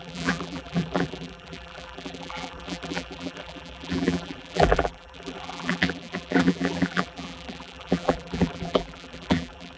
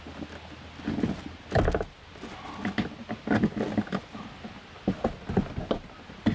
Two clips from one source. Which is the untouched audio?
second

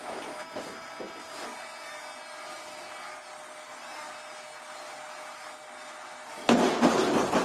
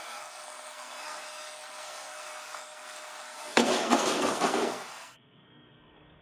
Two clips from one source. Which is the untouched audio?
first